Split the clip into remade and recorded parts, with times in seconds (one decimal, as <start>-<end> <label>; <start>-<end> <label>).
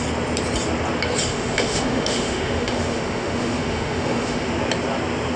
0.0-1.3 recorded; 1.3-4.5 remade; 4.5-5.4 recorded